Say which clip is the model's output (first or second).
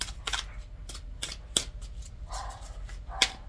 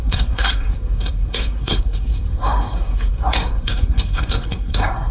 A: second